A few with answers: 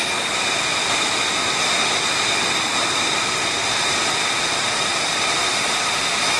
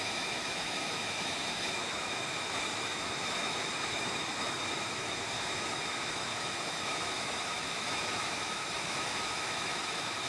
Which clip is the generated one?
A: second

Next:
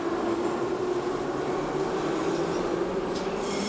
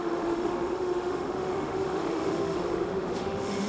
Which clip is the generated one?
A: second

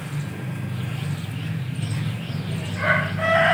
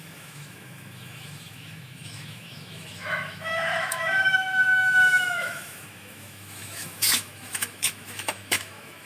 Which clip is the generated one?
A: second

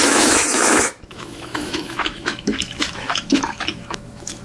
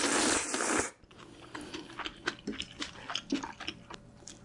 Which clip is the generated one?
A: first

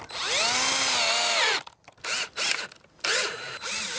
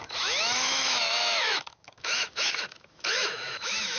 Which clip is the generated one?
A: second